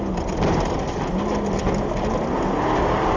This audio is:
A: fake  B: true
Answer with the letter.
B